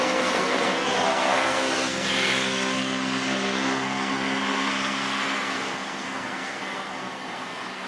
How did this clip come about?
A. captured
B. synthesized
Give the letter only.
B